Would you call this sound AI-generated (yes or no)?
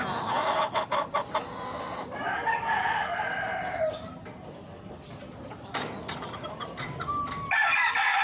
no